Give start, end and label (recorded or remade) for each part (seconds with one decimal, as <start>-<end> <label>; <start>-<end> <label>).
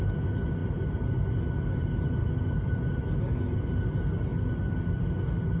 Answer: 0.0-5.6 recorded